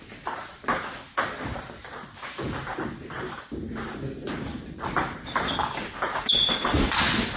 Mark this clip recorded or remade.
recorded